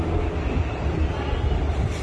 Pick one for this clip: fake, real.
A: real